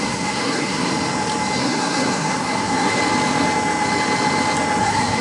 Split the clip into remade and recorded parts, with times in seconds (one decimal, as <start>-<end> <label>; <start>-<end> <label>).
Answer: 0.0-0.9 remade; 0.9-1.6 recorded; 1.6-3.0 remade; 3.0-4.8 recorded; 4.8-5.2 remade